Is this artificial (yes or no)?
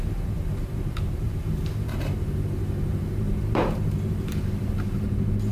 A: yes